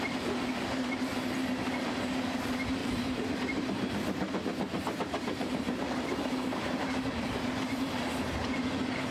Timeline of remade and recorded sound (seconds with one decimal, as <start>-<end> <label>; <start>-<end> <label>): 0.0-2.8 recorded; 2.8-7.9 remade; 7.9-9.1 recorded